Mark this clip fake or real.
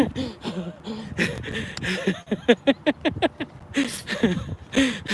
real